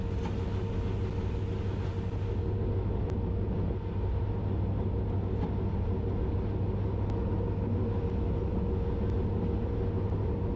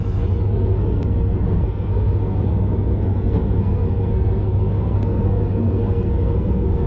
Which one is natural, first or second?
first